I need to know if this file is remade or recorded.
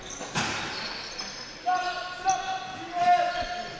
recorded